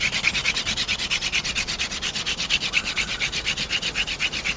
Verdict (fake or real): real